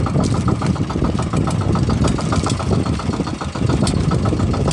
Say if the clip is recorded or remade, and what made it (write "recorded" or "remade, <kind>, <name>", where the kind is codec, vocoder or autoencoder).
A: recorded